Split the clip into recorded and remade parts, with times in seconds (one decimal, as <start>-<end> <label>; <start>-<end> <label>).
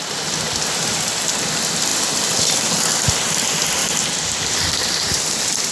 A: 0.0-3.8 recorded; 3.8-5.2 remade; 5.2-5.7 recorded